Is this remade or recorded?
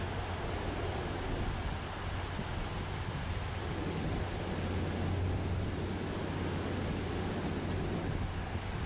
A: recorded